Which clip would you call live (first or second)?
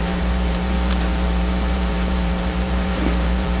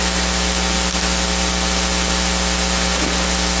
second